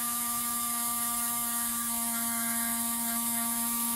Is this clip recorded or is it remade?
remade